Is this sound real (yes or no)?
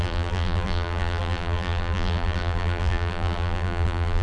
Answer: no